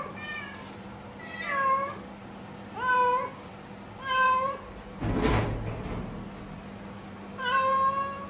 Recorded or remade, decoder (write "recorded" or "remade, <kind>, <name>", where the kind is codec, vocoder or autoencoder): recorded